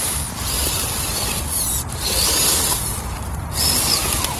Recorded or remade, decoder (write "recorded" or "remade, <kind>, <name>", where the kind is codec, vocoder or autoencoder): recorded